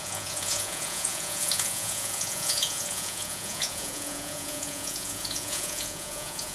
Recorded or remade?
remade